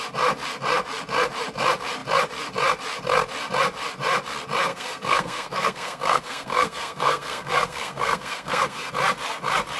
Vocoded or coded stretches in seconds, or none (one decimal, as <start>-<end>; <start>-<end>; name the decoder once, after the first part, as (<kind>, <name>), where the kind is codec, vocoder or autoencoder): 4.7-8.9 (codec, SNAC)